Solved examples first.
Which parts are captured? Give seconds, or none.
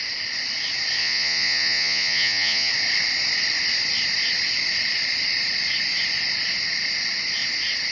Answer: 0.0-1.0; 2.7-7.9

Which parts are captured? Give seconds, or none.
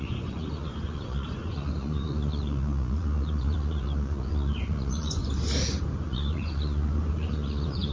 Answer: 5.2-6.0